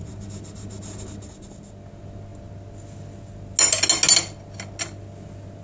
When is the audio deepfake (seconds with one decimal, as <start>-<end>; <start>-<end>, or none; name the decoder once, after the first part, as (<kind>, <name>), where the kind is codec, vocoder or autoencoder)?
none